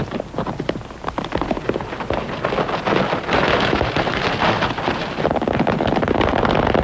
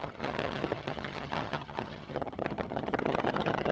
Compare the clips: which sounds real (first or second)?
first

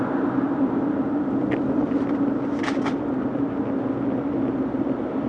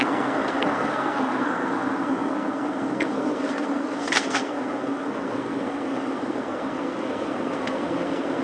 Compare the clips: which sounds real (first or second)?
first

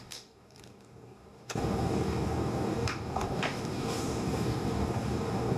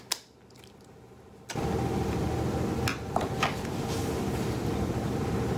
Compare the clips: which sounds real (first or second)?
second